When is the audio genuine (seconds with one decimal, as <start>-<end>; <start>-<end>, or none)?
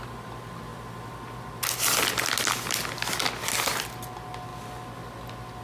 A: 0.0-5.6